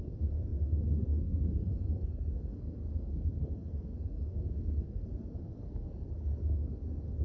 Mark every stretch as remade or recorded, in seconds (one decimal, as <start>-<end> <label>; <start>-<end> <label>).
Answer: 0.0-7.2 remade